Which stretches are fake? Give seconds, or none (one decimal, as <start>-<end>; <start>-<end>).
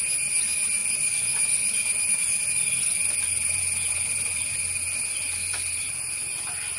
0.8-4.5